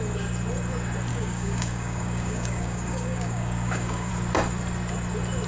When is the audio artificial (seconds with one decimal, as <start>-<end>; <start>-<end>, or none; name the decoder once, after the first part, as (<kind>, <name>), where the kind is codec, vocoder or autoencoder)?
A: 1.1-4.1 (codec, DAC)